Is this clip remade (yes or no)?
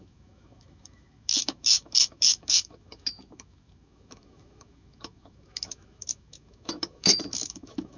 yes